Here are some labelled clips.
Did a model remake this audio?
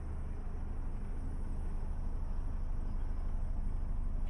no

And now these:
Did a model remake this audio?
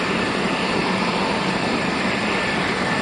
yes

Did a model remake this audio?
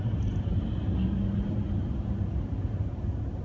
no